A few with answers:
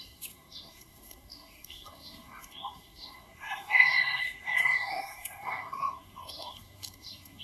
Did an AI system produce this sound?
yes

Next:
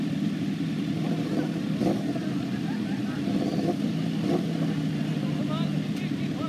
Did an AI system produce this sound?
no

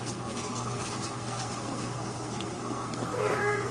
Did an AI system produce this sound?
yes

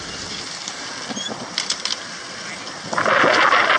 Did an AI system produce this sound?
no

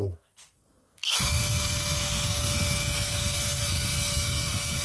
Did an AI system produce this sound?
yes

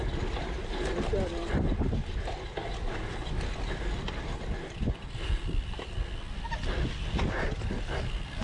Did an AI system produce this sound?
no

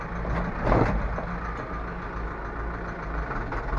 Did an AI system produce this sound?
no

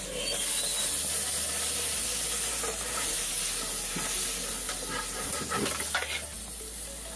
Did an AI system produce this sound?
no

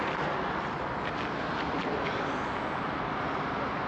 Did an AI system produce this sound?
no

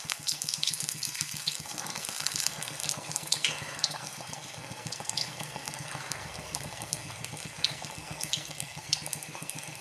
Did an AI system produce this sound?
yes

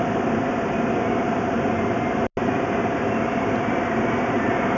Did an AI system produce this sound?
no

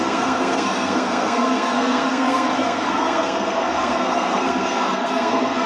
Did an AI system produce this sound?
yes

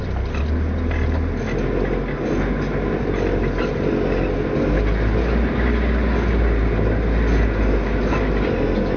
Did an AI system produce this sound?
no